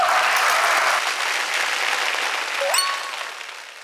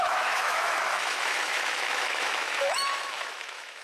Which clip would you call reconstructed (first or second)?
second